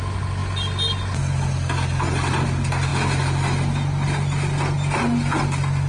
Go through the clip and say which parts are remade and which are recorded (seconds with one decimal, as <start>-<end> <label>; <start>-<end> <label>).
0.0-5.9 recorded